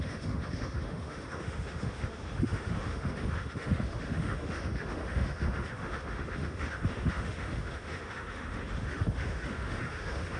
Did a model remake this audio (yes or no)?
yes